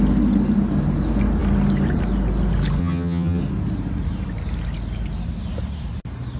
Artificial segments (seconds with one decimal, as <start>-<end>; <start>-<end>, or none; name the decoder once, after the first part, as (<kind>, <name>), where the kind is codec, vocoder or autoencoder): 2.8-3.4 (vocoder, HiFi-GAN)